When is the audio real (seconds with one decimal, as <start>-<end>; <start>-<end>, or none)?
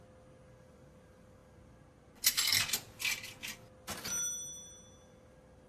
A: 0.0-5.7